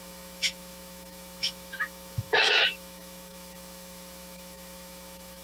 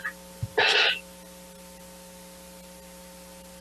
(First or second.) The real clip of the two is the second